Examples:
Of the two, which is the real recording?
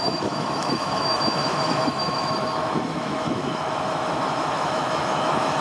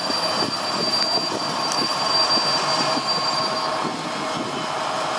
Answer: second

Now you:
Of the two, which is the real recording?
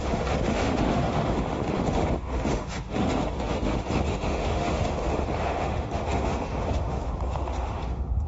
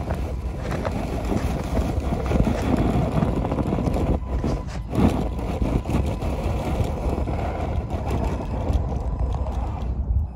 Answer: second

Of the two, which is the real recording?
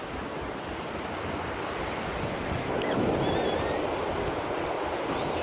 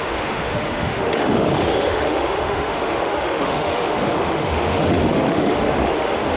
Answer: first